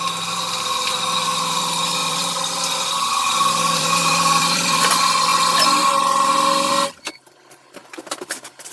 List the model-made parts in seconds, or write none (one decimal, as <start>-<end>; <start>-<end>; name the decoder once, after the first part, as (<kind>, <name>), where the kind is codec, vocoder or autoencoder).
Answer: 0.0-5.3 (vocoder, BigVGAN v2); 6.3-6.7; 7.2-8.7